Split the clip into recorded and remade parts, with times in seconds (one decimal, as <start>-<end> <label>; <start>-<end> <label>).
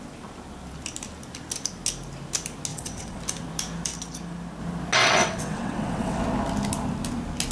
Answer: 0.0-2.7 recorded; 2.7-3.2 remade; 3.2-5.0 recorded; 5.0-6.2 remade; 6.2-7.5 recorded